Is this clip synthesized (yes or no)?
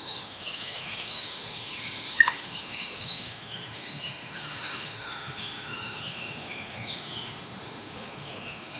yes